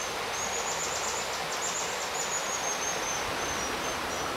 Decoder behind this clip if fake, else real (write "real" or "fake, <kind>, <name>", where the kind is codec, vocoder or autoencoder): real